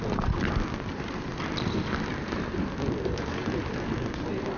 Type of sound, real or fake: real